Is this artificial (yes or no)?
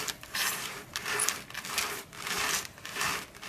yes